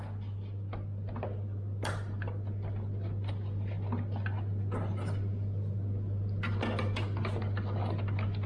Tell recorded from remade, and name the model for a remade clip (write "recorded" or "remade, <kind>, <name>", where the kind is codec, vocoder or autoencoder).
recorded